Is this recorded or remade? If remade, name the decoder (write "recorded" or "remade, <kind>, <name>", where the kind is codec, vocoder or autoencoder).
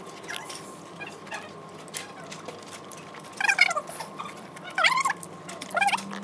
recorded